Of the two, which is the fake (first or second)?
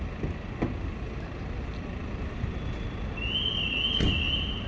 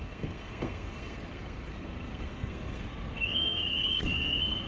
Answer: second